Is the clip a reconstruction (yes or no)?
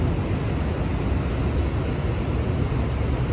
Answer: no